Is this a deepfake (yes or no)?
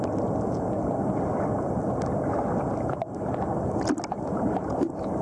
no